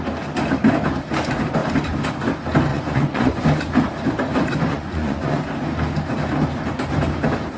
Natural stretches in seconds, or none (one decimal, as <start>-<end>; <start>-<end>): 0.0-2.7; 3.4-4.7; 5.5-7.6